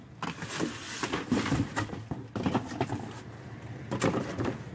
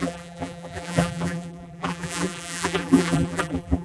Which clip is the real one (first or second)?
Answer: first